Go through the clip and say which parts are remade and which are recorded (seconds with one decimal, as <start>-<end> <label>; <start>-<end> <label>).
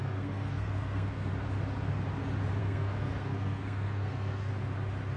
0.0-1.3 remade; 1.3-2.6 recorded; 2.6-4.5 remade; 4.5-5.2 recorded